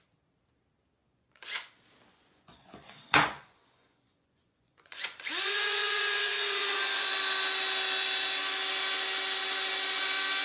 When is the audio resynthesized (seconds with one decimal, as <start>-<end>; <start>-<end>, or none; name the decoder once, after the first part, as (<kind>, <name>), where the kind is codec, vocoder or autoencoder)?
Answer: 1.0-1.7 (vocoder, Vocos); 2.1-7.1